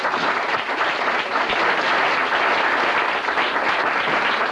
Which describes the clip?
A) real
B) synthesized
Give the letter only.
A